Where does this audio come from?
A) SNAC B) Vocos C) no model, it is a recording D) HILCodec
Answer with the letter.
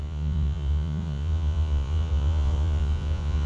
B